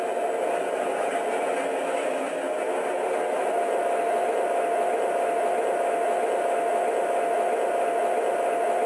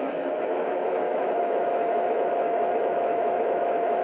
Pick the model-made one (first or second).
second